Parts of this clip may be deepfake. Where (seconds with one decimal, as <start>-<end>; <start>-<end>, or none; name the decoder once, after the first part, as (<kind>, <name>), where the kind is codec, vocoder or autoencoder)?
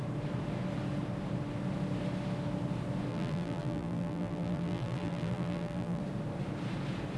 3.1-6.0 (vocoder, BigVGAN v2)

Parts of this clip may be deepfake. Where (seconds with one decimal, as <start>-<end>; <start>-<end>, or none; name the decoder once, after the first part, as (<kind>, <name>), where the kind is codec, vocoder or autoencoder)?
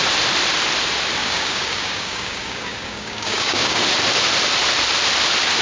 1.2-3.8 (codec, DAC)